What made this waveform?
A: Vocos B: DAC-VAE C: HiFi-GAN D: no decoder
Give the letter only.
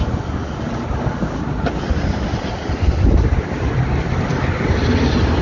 D